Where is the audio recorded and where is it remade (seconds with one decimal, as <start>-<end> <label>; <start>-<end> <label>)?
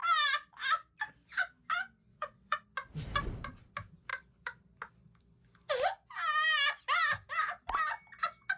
0.0-2.1 recorded; 2.1-2.6 remade; 2.6-8.6 recorded